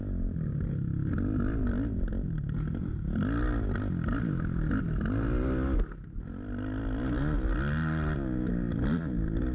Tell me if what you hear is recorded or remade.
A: recorded